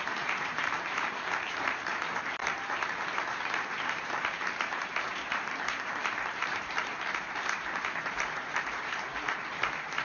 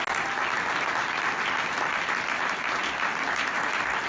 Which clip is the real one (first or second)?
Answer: second